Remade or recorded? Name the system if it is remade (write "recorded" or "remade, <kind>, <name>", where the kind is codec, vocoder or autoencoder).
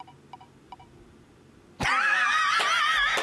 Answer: recorded